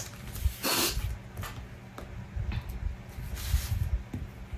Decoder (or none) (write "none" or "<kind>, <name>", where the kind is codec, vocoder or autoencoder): none